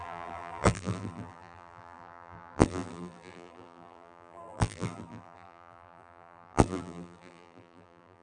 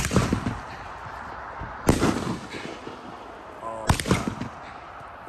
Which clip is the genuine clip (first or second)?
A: second